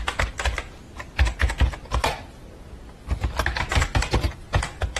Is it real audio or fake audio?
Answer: real